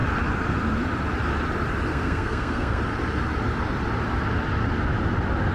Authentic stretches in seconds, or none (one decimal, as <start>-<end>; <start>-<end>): 0.0-1.9; 2.8-5.5